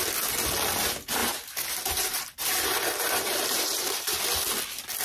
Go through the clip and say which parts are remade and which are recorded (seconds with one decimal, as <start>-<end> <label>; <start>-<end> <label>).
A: 0.0-1.2 recorded; 1.2-4.2 remade; 4.2-5.0 recorded